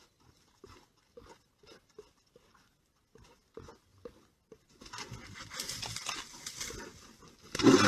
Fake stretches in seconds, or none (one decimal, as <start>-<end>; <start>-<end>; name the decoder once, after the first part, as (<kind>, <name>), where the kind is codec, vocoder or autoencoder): none